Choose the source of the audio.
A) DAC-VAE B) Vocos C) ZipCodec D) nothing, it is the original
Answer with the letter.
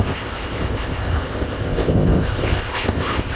C